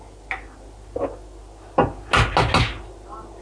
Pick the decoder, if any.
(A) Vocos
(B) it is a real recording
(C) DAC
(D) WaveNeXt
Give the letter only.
B